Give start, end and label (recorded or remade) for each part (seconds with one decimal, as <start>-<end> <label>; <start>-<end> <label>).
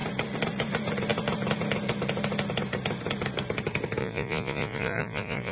0.0-4.0 recorded; 4.0-5.5 remade